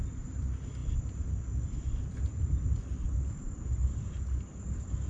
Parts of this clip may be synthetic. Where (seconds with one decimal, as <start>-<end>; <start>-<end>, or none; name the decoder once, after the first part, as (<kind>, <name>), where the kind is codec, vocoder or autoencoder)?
none